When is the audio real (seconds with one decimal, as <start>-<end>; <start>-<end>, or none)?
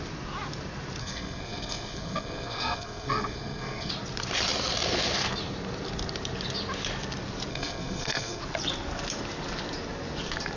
0.0-1.0; 3.9-7.5; 8.4-10.6